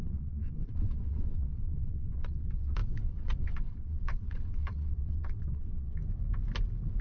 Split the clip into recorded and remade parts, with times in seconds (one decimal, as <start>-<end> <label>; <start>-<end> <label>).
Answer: 0.0-6.0 remade; 6.0-7.0 recorded